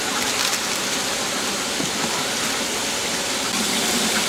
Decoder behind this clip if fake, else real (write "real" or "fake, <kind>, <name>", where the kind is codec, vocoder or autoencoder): real